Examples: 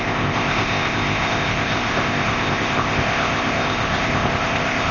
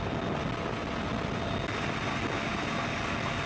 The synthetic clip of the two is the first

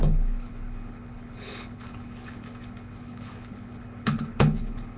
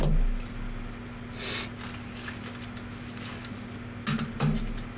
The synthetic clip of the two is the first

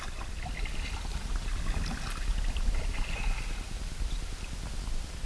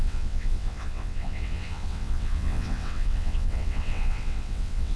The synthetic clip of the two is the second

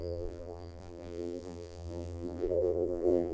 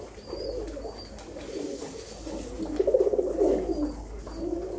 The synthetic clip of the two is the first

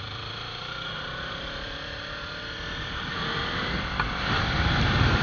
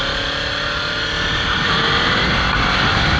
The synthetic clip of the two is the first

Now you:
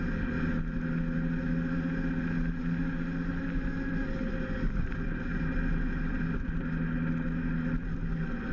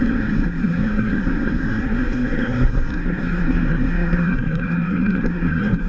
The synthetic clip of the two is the second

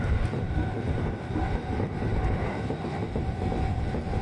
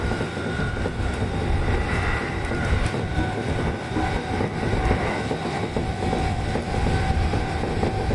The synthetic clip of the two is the first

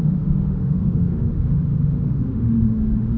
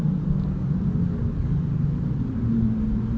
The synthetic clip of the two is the first